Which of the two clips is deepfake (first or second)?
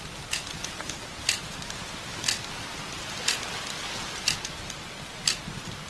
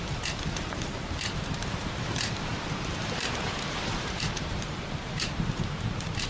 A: second